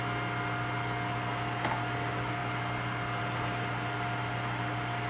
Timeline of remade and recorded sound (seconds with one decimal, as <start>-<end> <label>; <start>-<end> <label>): 0.0-5.1 recorded